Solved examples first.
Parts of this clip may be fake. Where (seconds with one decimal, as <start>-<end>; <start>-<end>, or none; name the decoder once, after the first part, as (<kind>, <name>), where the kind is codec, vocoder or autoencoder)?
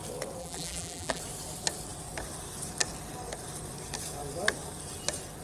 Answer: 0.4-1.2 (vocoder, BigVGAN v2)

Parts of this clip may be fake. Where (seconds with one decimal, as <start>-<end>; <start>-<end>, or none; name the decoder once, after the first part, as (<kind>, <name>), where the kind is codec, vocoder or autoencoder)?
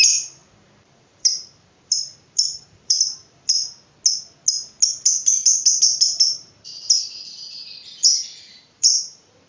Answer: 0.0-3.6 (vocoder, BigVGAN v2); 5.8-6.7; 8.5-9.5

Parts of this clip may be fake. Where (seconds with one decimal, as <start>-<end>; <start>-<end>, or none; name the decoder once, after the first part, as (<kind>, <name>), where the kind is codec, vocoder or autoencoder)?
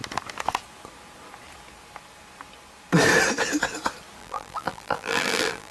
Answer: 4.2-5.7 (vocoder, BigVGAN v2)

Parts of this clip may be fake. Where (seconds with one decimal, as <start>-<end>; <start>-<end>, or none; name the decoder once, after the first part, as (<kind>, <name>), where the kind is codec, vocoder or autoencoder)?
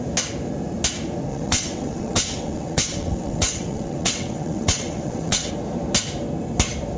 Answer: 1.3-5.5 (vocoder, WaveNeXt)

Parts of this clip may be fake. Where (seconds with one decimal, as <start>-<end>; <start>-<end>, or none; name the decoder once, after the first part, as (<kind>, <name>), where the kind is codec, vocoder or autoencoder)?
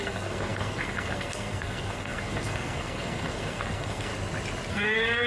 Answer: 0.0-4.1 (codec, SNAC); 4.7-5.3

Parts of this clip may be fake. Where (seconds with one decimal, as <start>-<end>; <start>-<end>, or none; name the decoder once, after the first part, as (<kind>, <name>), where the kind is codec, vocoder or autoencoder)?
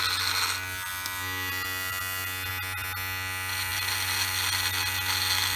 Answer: none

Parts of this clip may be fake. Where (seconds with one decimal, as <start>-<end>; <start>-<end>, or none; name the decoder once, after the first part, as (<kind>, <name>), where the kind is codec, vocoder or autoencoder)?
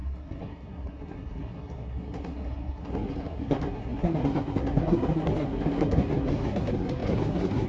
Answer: 0.0-7.7 (codec, SNAC)